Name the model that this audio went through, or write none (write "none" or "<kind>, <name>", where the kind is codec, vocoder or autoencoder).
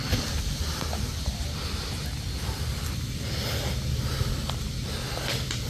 none